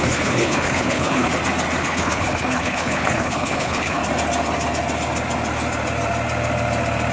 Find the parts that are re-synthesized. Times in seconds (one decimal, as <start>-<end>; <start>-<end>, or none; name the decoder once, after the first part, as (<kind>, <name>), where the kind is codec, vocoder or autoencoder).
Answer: 0.0-1.3 (codec, HILCodec); 1.8-4.0